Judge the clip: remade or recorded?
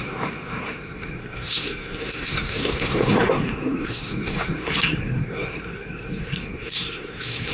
remade